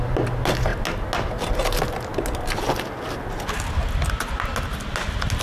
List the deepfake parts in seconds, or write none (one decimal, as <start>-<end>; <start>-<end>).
none